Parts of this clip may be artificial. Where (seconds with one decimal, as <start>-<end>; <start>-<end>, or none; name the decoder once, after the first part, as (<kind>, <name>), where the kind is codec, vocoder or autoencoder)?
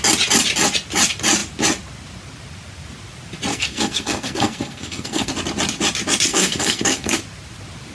3.5-5.3 (codec, SNAC); 6.3-7.2